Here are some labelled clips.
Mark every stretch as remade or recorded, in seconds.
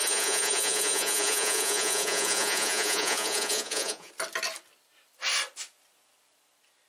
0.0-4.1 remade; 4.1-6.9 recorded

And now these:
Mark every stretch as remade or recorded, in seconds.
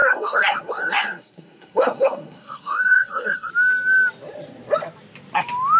0.0-3.5 remade; 3.5-5.8 recorded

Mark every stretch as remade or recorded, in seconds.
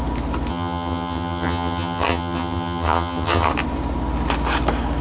0.0-0.5 recorded; 0.5-3.5 remade; 3.5-5.0 recorded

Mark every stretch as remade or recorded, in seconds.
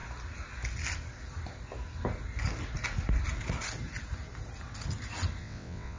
0.0-5.4 recorded; 5.4-6.0 remade